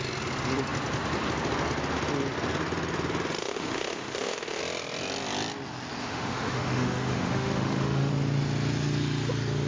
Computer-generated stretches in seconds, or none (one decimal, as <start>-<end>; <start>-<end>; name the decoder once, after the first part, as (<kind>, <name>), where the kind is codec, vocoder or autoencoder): 3.4-4.6 (autoencoder, DAC-VAE); 6.0-8.1